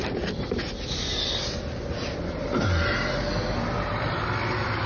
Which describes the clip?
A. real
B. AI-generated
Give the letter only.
A